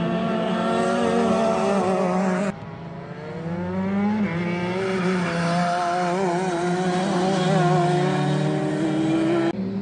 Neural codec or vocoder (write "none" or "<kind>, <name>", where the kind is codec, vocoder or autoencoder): none